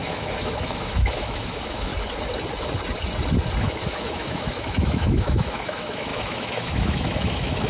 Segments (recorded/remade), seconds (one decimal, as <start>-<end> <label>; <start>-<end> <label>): 0.0-1.9 remade; 1.9-3.6 recorded; 3.6-7.7 remade